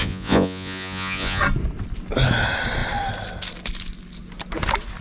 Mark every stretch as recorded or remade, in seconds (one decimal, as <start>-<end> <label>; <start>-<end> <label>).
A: 0.0-1.4 remade; 1.4-5.0 recorded